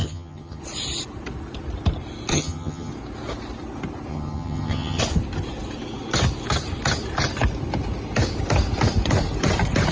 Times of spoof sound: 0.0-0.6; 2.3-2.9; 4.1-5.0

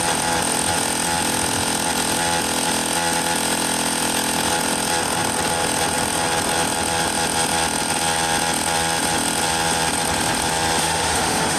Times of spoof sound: 10.8-11.6

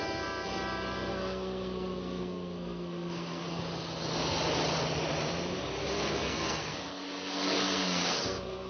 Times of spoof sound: 1.1-3.6; 5.8-8.7